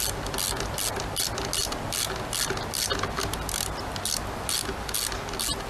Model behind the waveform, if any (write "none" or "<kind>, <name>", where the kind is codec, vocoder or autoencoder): none